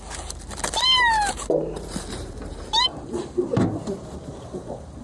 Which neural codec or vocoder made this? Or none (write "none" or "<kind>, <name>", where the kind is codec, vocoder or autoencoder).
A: vocoder, BigVGAN v2